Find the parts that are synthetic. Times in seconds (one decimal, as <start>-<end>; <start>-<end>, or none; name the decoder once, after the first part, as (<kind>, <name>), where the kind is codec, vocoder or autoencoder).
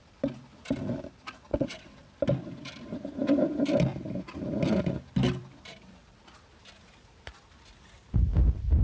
1.5-2.1 (vocoder, WaveNeXt)